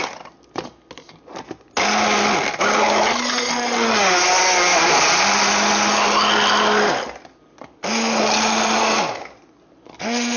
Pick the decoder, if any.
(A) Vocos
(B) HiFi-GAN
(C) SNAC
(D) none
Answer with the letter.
D